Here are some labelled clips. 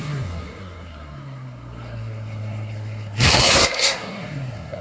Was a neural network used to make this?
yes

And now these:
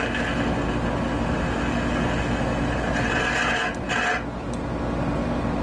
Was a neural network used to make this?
no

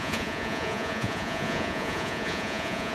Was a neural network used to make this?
yes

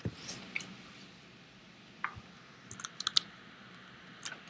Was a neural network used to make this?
no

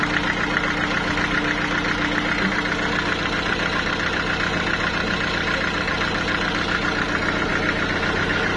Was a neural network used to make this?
no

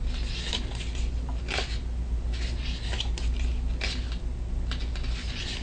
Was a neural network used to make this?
no